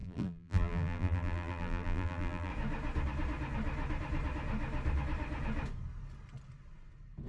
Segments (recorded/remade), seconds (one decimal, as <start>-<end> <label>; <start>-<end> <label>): 0.0-2.5 remade; 2.5-7.3 recorded